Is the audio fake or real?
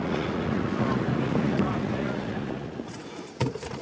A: fake